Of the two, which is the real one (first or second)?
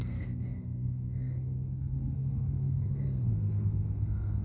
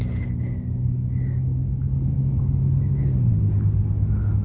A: second